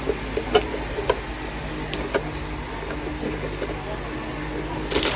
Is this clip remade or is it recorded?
recorded